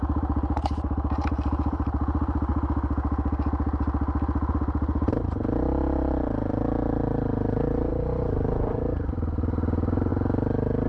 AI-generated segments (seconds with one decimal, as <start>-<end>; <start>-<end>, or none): 0.0-2.5; 4.5-10.1